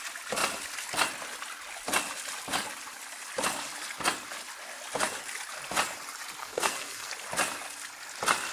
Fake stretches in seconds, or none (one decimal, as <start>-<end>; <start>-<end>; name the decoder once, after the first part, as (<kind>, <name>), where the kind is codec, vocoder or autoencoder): 6.4-7.1 (codec, SNAC)